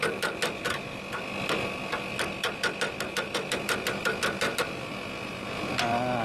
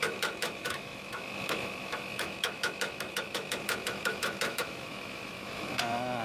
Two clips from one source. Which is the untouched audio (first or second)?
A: first